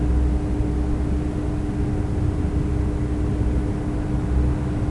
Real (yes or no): yes